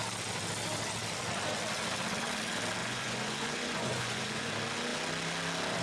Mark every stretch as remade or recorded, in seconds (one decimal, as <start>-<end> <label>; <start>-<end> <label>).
0.0-2.8 recorded; 2.8-4.5 remade; 4.5-5.8 recorded